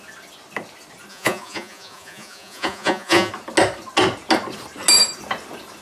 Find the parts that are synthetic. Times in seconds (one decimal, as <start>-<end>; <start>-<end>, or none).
1.1-3.3